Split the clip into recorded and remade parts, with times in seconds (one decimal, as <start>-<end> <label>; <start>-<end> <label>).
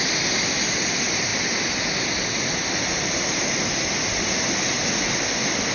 0.0-5.7 recorded